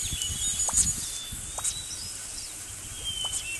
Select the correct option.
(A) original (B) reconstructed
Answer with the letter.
A